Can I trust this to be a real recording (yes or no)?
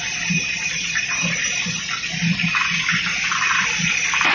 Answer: yes